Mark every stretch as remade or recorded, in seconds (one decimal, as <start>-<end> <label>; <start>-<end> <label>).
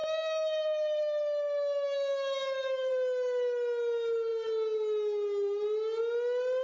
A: 0.0-2.9 remade; 2.9-6.6 recorded